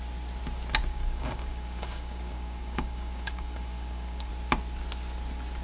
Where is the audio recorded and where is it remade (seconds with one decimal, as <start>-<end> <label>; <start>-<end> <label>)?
0.0-0.9 recorded; 0.9-4.3 remade; 4.3-5.6 recorded